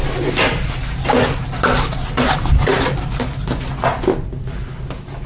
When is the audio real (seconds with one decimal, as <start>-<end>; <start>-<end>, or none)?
0.0-2.3; 2.7-5.3